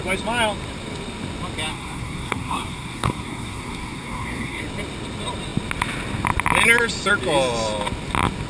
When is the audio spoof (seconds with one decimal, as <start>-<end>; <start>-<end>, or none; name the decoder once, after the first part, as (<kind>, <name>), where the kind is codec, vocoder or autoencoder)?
1.7-4.6 (codec, SNAC)